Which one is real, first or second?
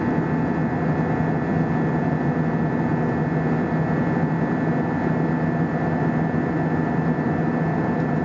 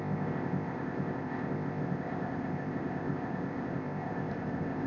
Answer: first